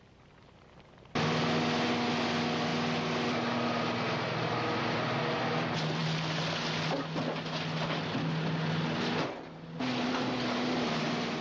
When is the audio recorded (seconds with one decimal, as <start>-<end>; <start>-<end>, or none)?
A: 0.0-11.4